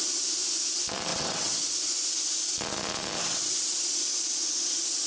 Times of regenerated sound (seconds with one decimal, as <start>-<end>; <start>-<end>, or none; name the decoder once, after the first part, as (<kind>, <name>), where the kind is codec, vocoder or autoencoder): 1.1-1.9 (vocoder, WaveNeXt); 3.3-3.8